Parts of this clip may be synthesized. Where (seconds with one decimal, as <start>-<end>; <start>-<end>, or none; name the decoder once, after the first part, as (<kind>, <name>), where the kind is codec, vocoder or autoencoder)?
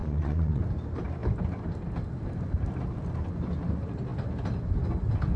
0.0-0.6 (vocoder, Vocos)